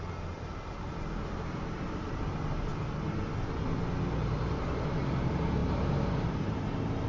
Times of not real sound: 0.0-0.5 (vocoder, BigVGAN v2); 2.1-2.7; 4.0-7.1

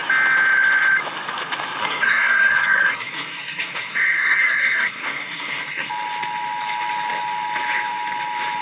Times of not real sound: 1.8-5.9 (codec, SNAC)

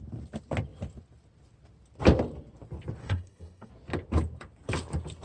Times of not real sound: 3.0-3.7 (codec, SNAC)

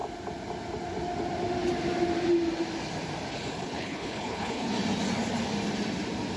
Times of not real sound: 3.3-4.7 (codec, HILCodec)

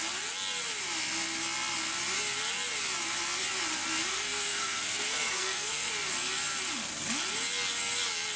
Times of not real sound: 4.1-5.9 (codec, SNAC)

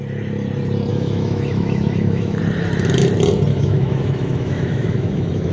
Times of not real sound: 0.9-2.4 (autoencoder, DAC-VAE); 3.5-5.5